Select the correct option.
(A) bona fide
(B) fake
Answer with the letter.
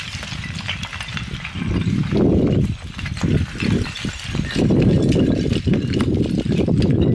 A